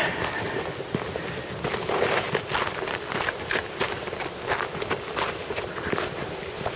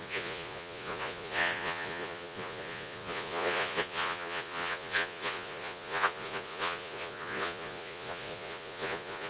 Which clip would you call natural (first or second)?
first